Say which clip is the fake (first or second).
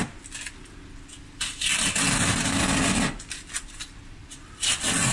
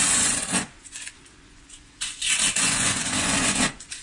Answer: second